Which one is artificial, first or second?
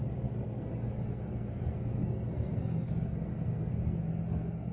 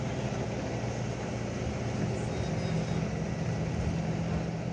first